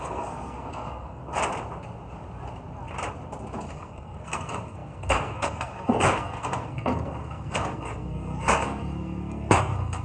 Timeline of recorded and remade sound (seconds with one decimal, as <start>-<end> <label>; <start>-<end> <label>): 0.0-1.2 remade; 1.2-3.7 recorded; 3.7-10.0 remade